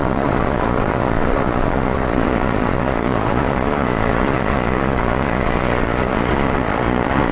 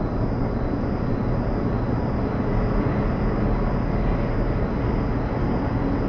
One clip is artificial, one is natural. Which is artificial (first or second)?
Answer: first